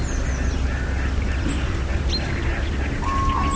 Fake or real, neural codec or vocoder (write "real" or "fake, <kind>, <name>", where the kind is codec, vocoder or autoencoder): real